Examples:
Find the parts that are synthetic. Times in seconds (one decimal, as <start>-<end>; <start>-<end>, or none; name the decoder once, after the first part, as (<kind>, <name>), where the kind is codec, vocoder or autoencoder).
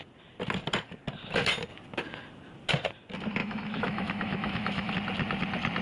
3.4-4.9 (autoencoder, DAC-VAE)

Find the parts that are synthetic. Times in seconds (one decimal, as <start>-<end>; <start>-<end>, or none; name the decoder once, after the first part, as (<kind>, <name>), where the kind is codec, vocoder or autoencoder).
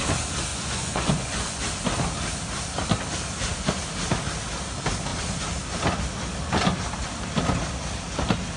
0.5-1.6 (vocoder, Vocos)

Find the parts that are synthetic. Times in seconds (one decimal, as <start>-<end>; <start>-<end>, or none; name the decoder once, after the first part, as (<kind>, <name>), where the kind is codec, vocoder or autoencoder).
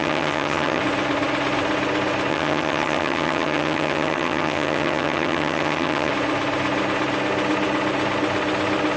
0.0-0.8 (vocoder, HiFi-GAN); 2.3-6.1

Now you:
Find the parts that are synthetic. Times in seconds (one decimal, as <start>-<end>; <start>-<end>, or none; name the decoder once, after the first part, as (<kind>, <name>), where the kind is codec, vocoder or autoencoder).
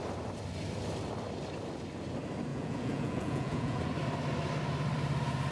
2.5-3.8 (vocoder, Vocos)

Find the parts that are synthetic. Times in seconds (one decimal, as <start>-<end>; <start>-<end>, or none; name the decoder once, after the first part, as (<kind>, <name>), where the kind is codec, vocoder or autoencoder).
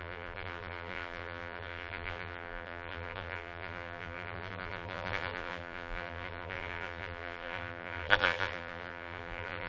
0.0-9.7 (vocoder, BigVGAN v2)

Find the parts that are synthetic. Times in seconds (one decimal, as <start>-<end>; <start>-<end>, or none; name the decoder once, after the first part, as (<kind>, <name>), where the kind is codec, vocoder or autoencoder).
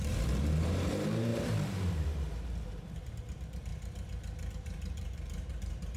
0.0-3.7 (vocoder, BigVGAN v2); 4.5-6.0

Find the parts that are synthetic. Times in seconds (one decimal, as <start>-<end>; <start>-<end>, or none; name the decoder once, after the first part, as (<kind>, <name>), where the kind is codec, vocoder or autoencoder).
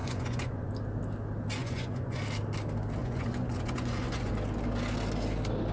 0.0-0.7 (vocoder, Vocos); 1.6-2.2; 3.0-4.3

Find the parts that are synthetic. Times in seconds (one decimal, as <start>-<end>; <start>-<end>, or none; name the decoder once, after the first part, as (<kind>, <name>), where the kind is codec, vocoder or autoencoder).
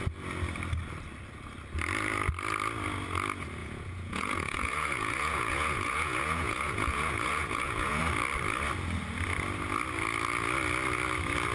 3.6-8.0 (vocoder, Vocos)